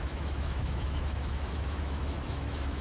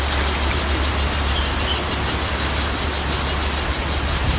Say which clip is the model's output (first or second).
first